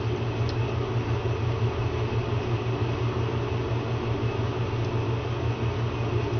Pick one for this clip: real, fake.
real